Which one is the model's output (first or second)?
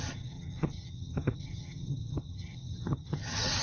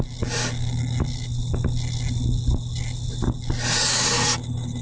first